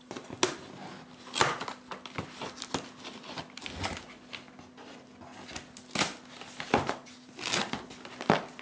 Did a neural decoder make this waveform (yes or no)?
no